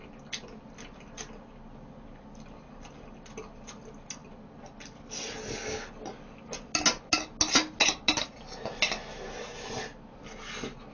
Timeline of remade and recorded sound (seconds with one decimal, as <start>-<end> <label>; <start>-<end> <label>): 0.0-10.9 recorded